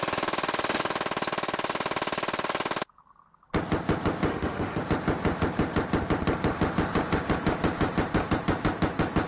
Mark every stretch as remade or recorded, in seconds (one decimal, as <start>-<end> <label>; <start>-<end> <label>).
0.0-4.3 recorded; 4.3-4.8 remade; 4.8-9.3 recorded